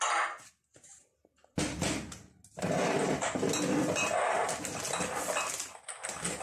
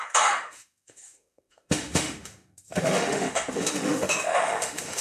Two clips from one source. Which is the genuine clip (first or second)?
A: first